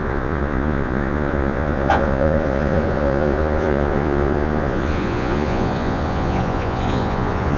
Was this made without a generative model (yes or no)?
no